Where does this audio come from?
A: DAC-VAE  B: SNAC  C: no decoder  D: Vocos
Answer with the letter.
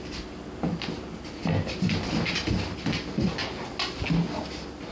C